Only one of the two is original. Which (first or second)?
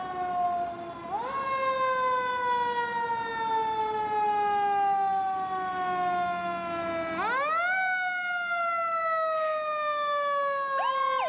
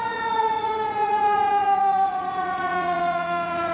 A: first